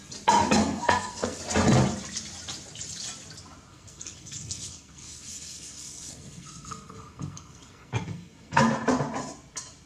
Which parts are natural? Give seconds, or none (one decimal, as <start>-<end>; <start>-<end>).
0.0-0.6; 1.4-3.7; 8.6-9.9

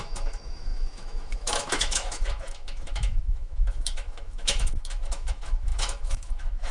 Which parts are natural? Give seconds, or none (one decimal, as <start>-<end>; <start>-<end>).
none